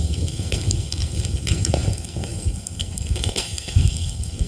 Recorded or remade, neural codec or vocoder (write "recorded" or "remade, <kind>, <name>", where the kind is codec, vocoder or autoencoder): remade, codec, SNAC